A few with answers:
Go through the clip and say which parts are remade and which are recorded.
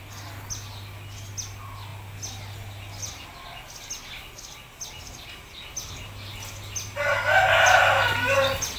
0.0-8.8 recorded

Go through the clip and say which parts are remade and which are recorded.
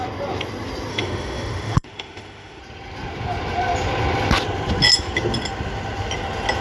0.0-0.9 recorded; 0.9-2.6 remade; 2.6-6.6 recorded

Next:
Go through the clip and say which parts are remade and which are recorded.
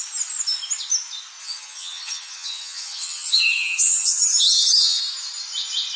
0.0-1.4 recorded; 1.4-5.0 remade; 5.0-6.0 recorded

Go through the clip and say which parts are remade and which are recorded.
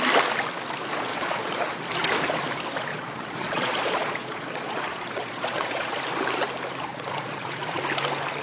0.0-1.1 recorded; 1.1-1.6 remade; 1.6-2.9 recorded; 2.9-6.0 remade; 6.0-6.9 recorded; 6.9-7.8 remade; 7.8-8.4 recorded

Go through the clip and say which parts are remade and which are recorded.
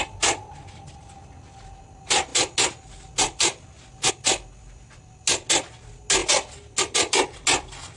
0.0-8.0 recorded